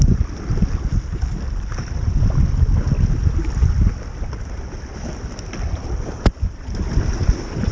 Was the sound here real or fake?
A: real